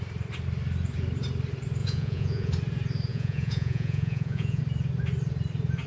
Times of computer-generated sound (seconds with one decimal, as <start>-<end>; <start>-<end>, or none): 1.8-2.5; 3.1-4.6